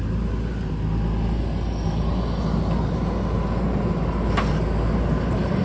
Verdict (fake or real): real